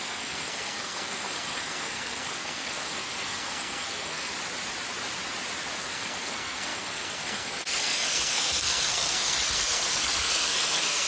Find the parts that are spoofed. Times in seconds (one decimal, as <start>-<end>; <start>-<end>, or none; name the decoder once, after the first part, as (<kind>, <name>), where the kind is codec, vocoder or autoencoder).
0.0-4.3 (codec, SNAC); 5.8-11.1